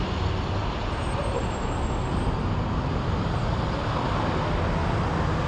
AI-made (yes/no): no